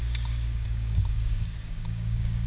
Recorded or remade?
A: remade